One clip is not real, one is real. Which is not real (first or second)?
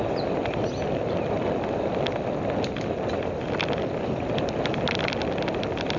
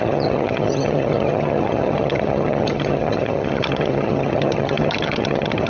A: second